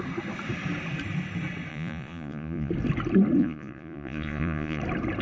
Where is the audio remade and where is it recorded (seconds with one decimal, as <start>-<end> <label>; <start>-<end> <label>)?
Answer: 0.0-1.7 recorded; 1.7-2.7 remade; 2.7-3.4 recorded; 3.4-4.8 remade; 4.8-5.2 recorded